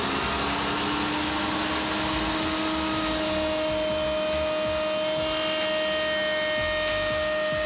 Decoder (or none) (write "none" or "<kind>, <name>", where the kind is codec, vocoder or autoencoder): none